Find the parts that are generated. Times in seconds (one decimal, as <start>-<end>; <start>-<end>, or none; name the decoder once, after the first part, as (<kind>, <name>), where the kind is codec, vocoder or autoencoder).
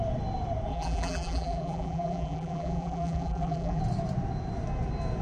0.7-3.8 (vocoder, BigVGAN v2)